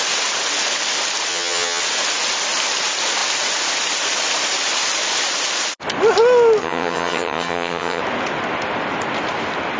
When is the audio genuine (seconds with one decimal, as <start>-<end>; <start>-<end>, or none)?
0.0-1.3; 1.8-6.6; 8.0-9.8